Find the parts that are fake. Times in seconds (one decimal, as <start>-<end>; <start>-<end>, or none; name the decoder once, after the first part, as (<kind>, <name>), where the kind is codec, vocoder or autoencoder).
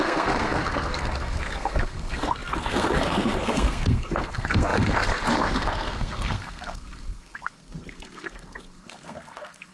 0.0-9.7 (codec, SNAC)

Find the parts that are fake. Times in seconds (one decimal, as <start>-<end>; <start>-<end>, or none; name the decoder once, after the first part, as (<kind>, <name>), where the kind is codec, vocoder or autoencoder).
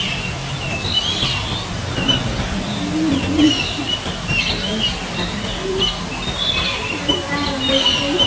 none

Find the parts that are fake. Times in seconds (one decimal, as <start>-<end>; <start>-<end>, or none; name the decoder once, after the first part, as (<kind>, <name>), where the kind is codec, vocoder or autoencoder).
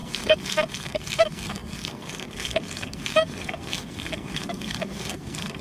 0.0-5.6 (codec, SNAC)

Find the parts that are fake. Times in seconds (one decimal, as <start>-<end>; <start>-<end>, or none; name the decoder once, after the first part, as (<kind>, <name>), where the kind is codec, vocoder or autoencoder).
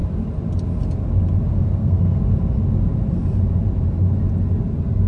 1.5-2.2 (codec, SNAC)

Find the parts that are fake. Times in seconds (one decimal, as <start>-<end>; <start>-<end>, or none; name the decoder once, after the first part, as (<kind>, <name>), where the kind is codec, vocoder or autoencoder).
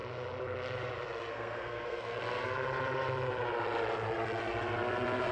1.3-2.4 (codec, SNAC)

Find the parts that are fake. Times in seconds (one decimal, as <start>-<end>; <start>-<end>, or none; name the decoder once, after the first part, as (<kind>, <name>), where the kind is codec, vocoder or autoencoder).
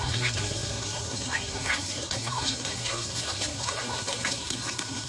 0.0-5.1 (codec, SNAC)